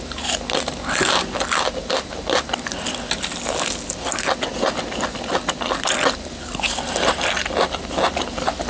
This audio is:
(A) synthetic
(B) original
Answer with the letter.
B